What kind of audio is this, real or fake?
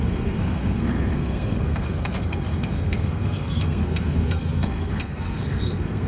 fake